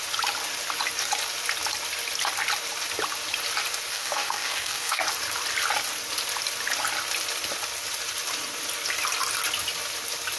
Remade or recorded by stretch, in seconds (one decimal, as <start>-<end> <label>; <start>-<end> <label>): 0.0-3.9 recorded; 3.9-5.0 remade; 5.0-10.4 recorded